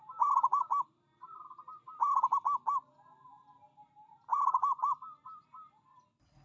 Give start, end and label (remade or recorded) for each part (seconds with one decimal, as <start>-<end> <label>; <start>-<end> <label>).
0.0-4.3 recorded; 4.3-6.4 remade